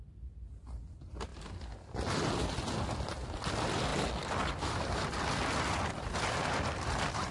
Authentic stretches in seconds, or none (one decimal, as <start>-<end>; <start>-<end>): 0.0-7.3